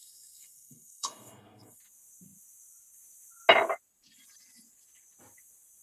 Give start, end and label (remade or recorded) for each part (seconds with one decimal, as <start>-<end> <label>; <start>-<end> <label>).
0.0-1.8 remade; 1.8-5.8 recorded